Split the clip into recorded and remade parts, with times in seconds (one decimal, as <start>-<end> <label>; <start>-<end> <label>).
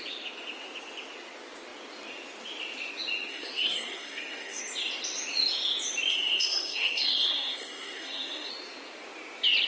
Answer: 0.0-3.3 recorded; 3.3-4.6 remade; 4.6-6.1 recorded; 6.1-8.5 remade; 8.5-9.7 recorded